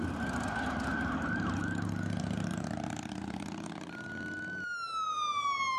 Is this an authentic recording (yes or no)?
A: no